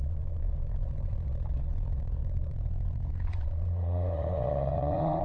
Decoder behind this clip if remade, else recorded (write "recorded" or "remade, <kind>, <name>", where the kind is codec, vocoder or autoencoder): remade, vocoder, Vocos